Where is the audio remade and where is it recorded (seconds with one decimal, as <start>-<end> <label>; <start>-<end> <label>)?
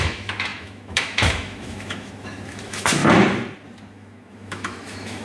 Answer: 0.0-3.0 remade; 3.0-3.9 recorded; 3.9-5.2 remade